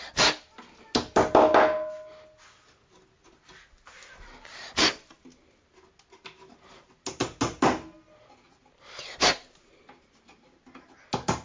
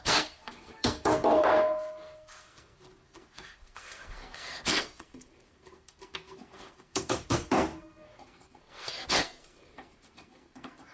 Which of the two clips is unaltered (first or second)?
first